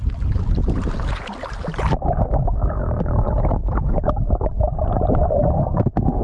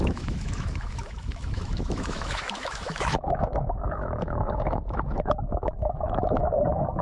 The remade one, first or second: second